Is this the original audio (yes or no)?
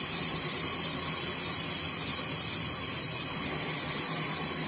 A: yes